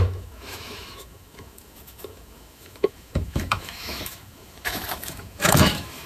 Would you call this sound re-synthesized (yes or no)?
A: yes